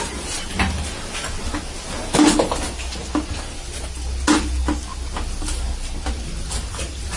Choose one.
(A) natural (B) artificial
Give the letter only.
A